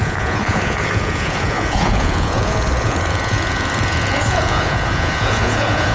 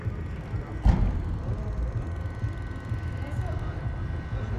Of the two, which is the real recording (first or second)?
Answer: second